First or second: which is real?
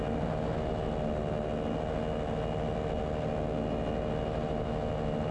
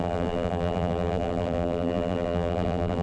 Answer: first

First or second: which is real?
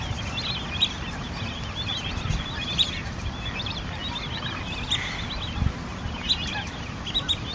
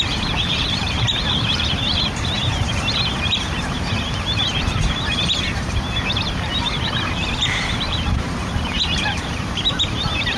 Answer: first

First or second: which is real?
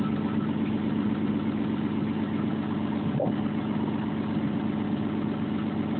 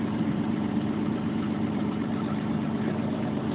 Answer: first